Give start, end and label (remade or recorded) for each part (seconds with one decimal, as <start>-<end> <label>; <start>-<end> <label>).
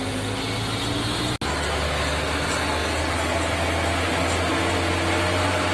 0.0-5.7 recorded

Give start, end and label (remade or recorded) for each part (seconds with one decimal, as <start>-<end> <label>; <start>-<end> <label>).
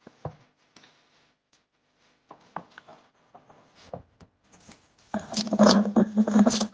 0.0-6.7 recorded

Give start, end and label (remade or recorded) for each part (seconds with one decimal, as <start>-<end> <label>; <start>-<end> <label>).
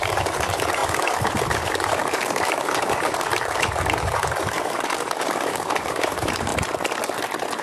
0.0-6.5 remade; 6.5-7.6 recorded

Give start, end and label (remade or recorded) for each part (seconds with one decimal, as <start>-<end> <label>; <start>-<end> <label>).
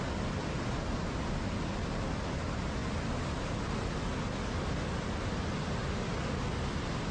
0.0-7.1 recorded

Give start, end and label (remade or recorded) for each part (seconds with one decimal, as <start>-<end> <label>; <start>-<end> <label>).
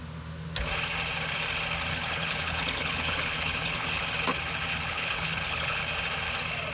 0.0-1.9 recorded; 1.9-4.0 remade; 4.0-4.7 recorded; 4.7-5.8 remade; 5.8-6.7 recorded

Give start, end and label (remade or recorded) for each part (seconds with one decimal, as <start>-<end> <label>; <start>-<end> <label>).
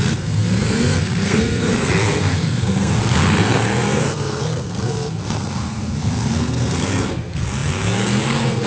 0.0-8.7 remade